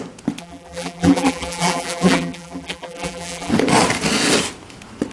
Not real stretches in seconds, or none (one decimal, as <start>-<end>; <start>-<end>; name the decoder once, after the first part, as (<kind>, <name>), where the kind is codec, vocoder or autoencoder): 0.4-3.5 (vocoder, BigVGAN v2)